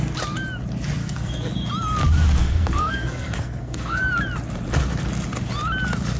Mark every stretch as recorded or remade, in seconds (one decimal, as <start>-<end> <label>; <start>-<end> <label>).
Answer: 0.0-1.0 recorded; 1.0-1.5 remade; 1.5-2.4 recorded; 2.4-4.0 remade; 4.0-6.2 recorded